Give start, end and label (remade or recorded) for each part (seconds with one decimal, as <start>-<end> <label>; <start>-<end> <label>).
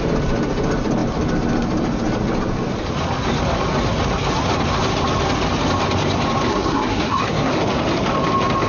0.0-6.5 recorded; 6.5-7.5 remade; 7.5-8.7 recorded